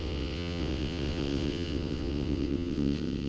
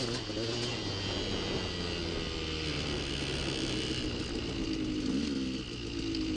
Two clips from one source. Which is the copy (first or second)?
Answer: first